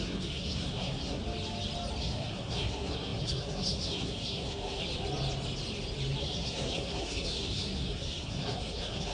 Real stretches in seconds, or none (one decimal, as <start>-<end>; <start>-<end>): 1.2-2.0; 4.8-6.2